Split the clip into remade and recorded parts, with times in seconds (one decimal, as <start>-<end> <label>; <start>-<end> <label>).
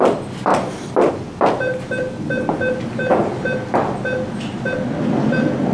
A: 0.0-5.7 recorded